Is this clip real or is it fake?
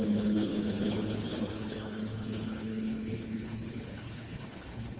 fake